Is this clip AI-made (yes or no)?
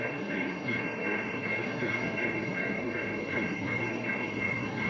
yes